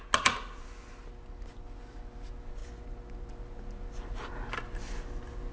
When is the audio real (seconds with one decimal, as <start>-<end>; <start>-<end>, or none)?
0.0-5.5